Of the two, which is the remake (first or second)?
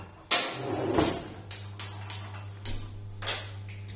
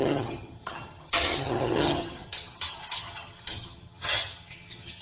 second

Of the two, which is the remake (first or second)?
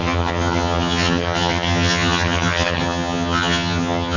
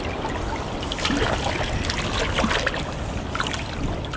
first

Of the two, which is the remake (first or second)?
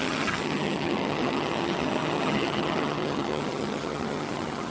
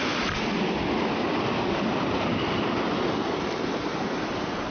first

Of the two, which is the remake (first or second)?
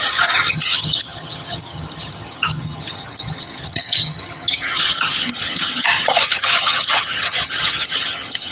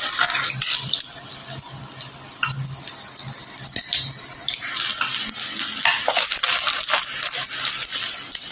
first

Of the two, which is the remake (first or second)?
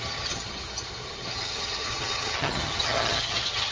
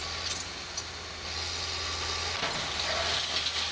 first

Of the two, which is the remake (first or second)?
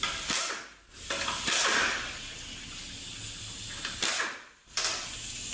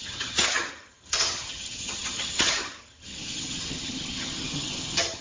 second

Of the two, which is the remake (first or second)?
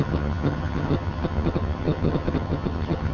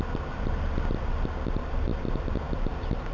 first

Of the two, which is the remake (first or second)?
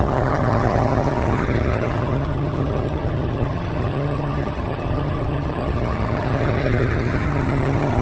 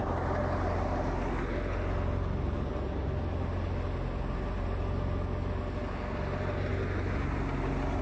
first